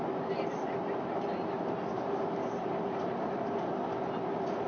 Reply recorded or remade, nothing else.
recorded